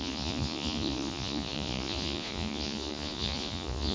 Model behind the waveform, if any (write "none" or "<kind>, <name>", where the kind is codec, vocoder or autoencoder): vocoder, Vocos